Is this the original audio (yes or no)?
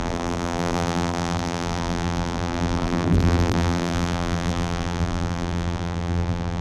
no